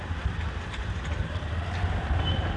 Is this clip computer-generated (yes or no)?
no